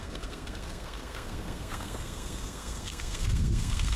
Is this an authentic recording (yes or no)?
no